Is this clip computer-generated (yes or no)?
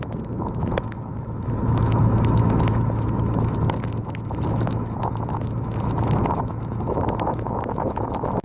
yes